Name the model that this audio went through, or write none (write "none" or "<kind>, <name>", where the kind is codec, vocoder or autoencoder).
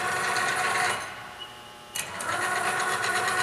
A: vocoder, BigVGAN v2